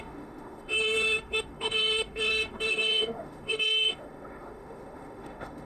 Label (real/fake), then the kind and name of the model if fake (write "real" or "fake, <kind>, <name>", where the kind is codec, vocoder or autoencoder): fake, autoencoder, DAC-VAE